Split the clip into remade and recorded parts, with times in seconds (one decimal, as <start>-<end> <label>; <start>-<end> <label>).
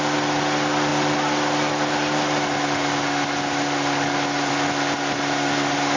0.0-6.0 recorded